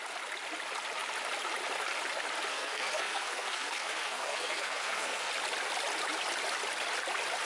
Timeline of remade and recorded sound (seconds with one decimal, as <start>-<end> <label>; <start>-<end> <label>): 0.0-2.5 recorded; 2.5-5.3 remade; 5.3-7.4 recorded